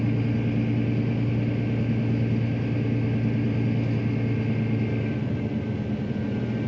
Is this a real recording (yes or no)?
yes